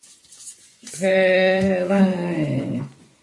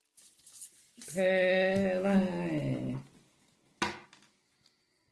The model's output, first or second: first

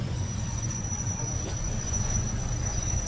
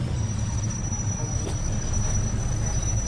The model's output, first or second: first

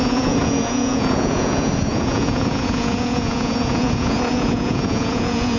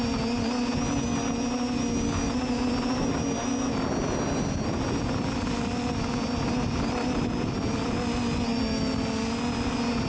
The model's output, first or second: first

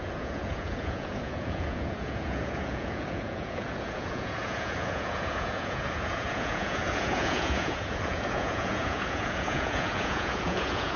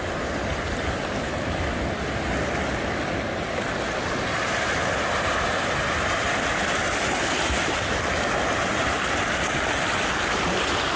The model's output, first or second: first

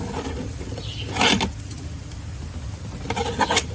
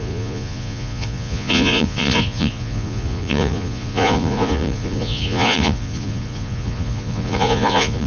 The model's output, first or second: second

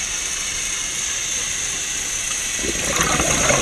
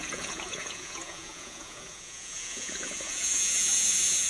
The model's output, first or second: second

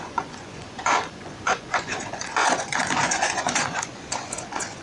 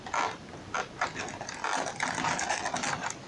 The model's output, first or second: first